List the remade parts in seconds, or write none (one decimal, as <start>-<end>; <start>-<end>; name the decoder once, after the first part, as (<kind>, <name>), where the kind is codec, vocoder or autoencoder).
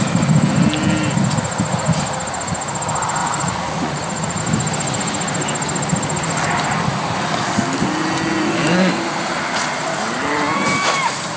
3.2-4.4 (vocoder, Vocos)